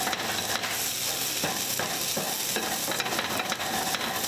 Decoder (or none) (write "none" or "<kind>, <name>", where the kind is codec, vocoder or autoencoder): none